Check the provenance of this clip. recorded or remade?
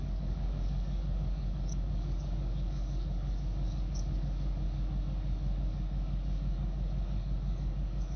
remade